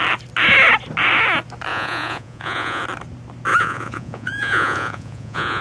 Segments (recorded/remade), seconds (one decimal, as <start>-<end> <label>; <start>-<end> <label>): 0.0-1.7 recorded; 1.7-2.8 remade; 2.8-3.5 recorded; 3.5-5.6 remade